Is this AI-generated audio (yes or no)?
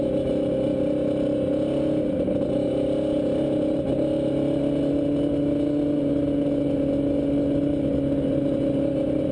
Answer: no